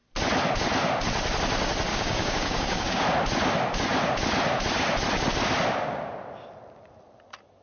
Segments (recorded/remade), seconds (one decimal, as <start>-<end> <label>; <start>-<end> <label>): 0.0-1.9 recorded; 1.9-3.0 remade; 3.0-7.6 recorded